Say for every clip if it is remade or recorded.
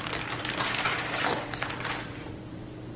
recorded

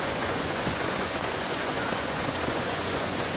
remade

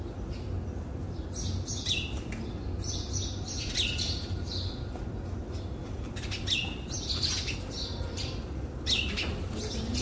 recorded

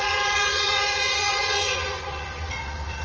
remade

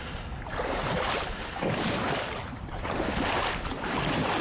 recorded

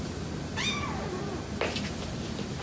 recorded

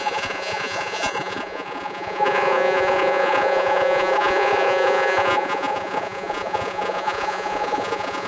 remade